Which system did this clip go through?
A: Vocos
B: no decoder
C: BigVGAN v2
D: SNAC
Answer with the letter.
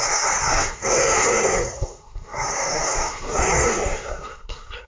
D